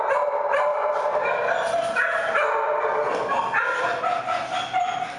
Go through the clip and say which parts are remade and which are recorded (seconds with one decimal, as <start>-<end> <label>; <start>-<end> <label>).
0.0-5.2 recorded